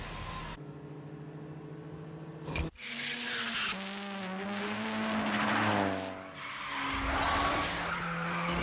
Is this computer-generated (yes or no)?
no